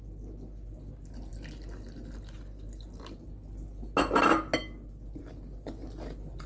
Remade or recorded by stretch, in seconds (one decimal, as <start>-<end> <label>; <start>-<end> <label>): 0.0-6.5 recorded